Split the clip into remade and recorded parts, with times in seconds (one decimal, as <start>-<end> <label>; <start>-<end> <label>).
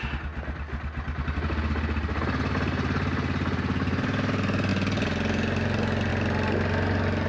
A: 0.0-7.3 recorded